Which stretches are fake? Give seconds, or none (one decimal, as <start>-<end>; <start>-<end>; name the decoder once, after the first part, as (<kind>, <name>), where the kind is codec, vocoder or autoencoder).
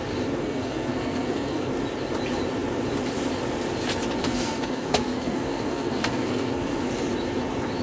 0.4-1.7 (codec, SNAC); 4.2-6.9